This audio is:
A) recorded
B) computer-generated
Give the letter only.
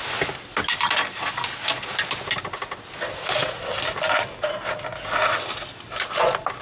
A